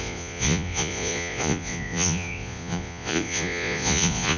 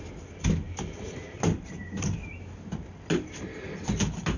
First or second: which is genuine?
second